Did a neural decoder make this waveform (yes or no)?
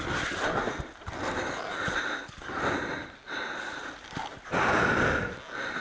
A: no